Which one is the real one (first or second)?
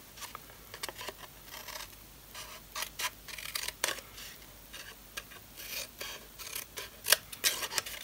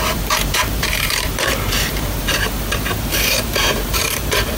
first